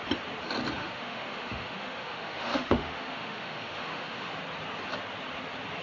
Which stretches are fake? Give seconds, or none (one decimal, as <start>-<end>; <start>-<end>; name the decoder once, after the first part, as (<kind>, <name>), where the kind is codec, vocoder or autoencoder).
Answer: 0.8-4.3 (autoencoder, DAC-VAE)